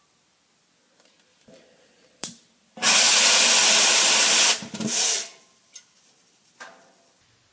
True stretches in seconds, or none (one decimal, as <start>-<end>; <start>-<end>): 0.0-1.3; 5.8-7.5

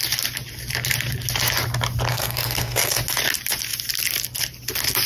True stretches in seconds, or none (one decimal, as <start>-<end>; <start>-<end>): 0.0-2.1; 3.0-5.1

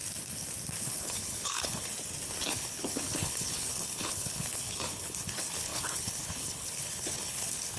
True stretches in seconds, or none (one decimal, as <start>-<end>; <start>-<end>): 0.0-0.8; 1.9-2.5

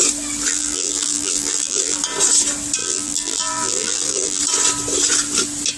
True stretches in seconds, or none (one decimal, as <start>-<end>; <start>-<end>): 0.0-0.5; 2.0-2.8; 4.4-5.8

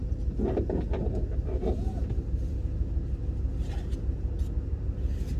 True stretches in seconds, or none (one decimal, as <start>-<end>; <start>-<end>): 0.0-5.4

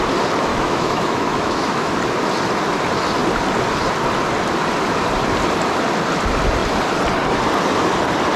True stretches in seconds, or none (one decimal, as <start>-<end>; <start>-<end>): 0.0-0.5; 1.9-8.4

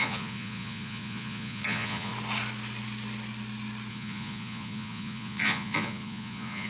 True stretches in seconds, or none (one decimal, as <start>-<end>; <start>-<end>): 2.1-3.9